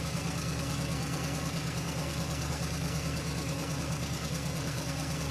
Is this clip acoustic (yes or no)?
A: no